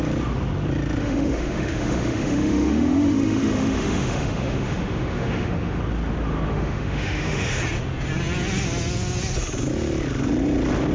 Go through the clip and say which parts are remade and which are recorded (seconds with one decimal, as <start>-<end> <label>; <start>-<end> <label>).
0.0-1.0 recorded; 1.0-5.8 remade; 5.8-6.5 recorded; 6.5-7.6 remade; 7.6-10.9 recorded